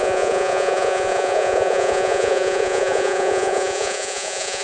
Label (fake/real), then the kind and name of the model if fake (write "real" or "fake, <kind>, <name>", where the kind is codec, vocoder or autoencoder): fake, vocoder, Vocos